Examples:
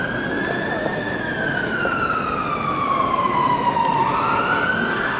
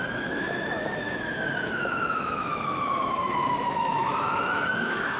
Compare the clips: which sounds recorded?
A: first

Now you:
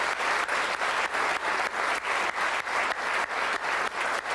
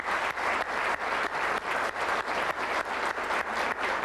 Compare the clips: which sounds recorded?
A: first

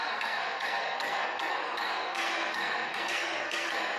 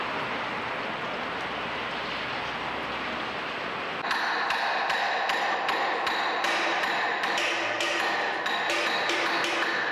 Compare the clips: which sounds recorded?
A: second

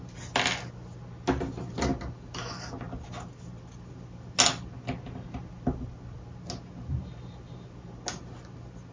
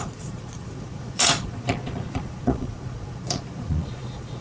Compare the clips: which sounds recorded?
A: first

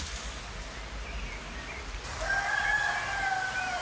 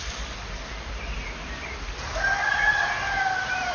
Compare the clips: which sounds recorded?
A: first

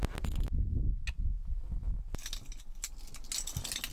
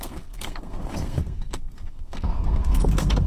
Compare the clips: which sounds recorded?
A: first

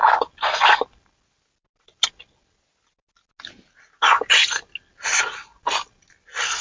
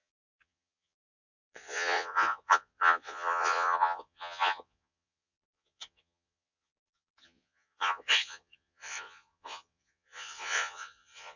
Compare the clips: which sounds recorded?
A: first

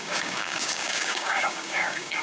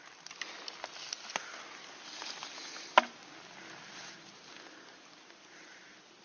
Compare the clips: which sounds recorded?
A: second